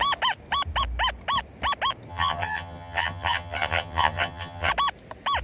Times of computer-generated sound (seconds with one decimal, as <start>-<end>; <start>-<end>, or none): 2.1-4.7